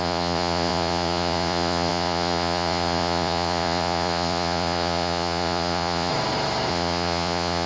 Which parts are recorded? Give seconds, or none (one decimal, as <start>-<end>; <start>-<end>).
6.1-6.7